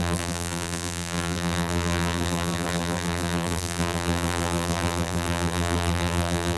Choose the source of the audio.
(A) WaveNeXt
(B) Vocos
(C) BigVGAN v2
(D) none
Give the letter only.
C